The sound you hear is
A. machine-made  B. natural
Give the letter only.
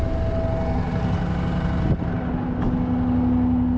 B